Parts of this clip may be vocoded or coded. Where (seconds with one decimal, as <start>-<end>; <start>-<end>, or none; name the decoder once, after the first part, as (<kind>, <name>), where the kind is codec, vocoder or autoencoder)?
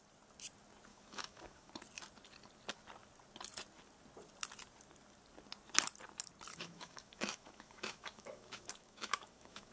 0.9-1.7 (autoencoder, DAC-VAE); 6.5-9.7